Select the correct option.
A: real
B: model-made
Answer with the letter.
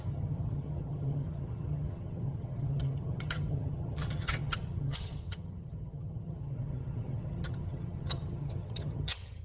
B